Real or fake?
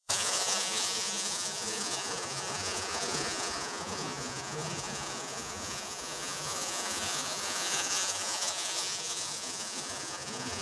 fake